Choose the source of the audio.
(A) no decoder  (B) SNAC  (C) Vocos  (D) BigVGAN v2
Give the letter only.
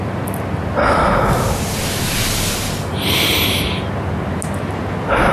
A